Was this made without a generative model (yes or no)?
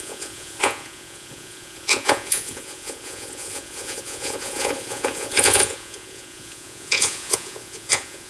no